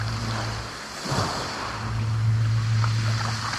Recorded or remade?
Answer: recorded